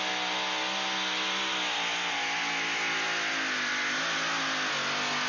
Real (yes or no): yes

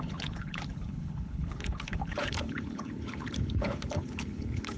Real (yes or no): no